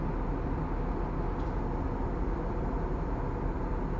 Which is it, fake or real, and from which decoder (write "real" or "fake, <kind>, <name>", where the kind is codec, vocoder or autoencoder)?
real